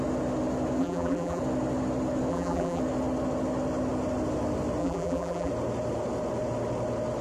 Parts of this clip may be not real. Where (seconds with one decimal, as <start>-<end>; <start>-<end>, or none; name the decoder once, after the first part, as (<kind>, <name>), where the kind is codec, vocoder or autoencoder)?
0.8-1.4 (vocoder, BigVGAN v2); 2.3-2.8; 4.8-5.5